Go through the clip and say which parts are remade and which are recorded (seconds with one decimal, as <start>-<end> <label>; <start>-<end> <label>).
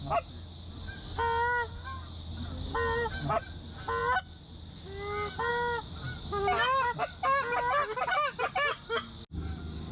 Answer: 0.0-9.9 recorded